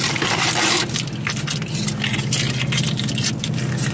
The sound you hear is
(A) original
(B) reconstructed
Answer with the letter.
A